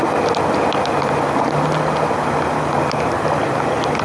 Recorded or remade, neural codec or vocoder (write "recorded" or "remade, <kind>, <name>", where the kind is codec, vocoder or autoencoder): recorded